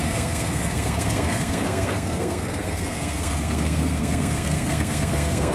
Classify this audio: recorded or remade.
remade